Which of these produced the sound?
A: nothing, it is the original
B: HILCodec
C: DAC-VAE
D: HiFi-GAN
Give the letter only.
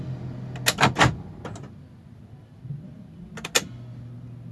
A